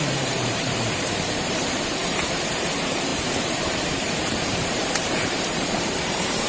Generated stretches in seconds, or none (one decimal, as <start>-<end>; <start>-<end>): 0.0-6.5